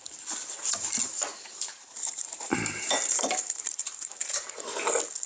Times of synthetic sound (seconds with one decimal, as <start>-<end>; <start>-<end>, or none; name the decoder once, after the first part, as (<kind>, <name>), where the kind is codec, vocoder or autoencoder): 1.3-4.5 (vocoder, BigVGAN v2)